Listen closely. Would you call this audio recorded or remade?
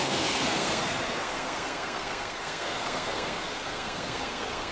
remade